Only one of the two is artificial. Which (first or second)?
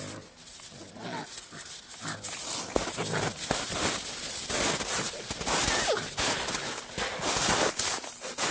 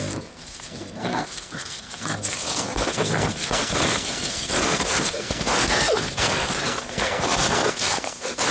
second